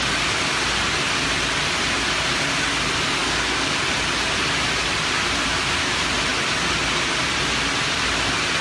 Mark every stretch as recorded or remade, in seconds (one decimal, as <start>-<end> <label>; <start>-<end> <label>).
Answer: 0.0-3.2 recorded; 3.2-3.7 remade; 3.7-8.6 recorded